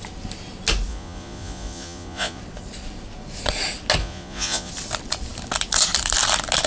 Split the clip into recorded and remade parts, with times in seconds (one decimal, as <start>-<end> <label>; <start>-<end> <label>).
0.0-0.9 recorded; 0.9-2.4 remade; 2.4-4.0 recorded; 4.0-4.7 remade; 4.7-6.7 recorded